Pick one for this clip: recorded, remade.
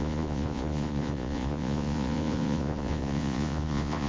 remade